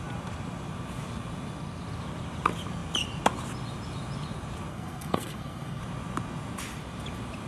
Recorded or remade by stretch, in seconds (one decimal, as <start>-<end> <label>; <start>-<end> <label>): 0.0-4.7 recorded; 4.7-5.8 remade; 5.8-7.5 recorded